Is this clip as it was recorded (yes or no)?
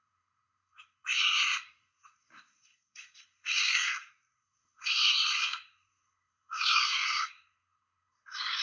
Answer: no